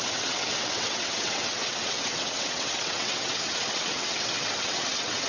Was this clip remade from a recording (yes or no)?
yes